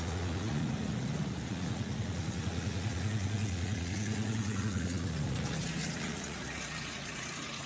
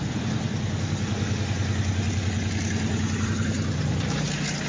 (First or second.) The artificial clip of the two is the first